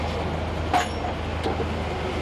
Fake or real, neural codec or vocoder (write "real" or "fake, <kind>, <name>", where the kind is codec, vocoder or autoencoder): real